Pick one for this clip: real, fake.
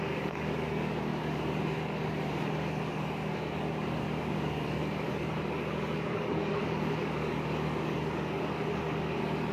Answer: fake